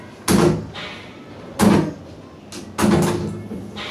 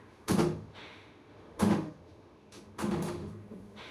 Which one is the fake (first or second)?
second